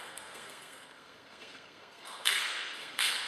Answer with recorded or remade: remade